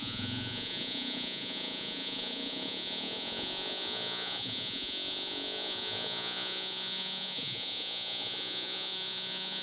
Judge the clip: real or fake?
fake